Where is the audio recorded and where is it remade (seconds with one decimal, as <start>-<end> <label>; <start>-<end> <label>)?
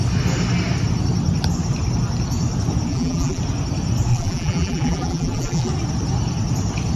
0.0-2.9 recorded; 2.9-3.4 remade; 3.4-4.1 recorded; 4.1-5.7 remade; 5.7-7.0 recorded